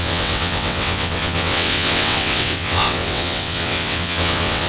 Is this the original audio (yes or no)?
no